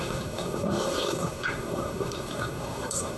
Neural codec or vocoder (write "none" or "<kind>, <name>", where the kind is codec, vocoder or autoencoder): codec, SNAC